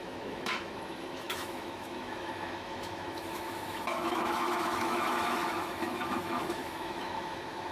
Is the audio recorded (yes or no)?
no